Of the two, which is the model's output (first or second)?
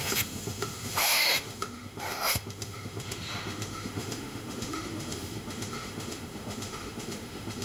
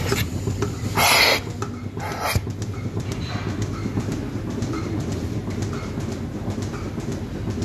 first